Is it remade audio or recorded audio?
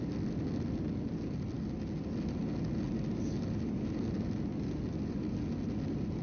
recorded